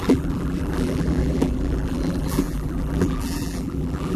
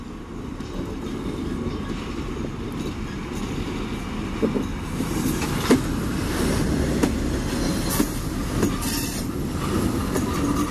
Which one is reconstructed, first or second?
first